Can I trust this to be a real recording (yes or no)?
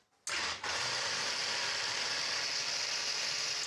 yes